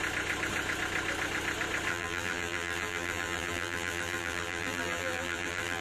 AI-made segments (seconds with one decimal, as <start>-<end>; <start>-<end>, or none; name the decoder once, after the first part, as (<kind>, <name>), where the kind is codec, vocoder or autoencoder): 1.9-5.8 (vocoder, BigVGAN v2)